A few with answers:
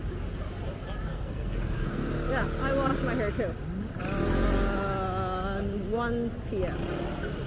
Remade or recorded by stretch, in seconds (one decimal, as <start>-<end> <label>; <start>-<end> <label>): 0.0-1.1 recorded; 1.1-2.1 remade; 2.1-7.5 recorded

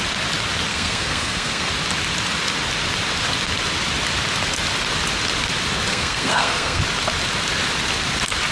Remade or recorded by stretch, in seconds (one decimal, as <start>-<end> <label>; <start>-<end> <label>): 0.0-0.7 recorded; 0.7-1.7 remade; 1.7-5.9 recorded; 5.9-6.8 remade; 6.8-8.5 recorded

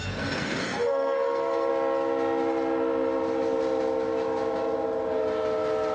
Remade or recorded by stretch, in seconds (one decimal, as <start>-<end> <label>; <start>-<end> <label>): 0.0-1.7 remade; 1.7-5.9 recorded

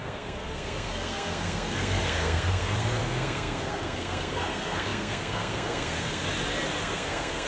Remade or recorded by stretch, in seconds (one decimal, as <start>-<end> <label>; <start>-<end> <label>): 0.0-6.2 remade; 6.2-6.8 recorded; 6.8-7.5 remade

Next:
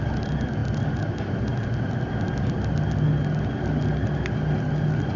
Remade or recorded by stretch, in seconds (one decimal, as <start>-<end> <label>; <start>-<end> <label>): 0.0-5.2 recorded